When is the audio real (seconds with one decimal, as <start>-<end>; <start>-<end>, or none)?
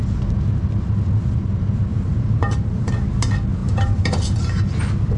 0.0-1.9; 2.9-3.6; 4.6-5.2